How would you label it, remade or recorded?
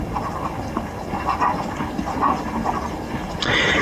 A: recorded